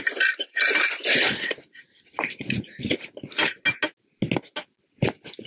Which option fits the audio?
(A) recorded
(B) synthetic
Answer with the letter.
A